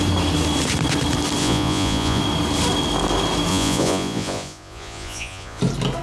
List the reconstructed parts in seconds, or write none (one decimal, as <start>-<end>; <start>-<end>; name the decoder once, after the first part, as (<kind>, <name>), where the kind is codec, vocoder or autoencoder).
1.4-2.2 (vocoder, Vocos); 3.5-5.6